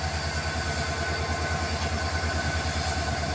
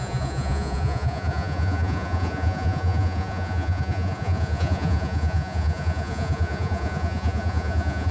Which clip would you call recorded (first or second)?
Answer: first